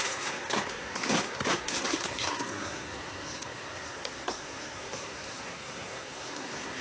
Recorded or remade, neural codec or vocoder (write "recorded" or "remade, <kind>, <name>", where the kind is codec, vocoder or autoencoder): remade, codec, SNAC